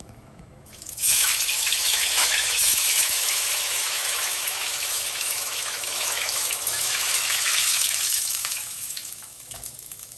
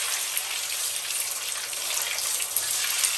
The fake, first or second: first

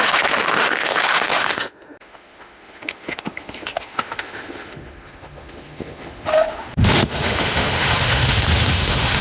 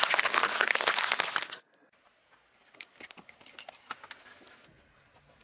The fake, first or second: first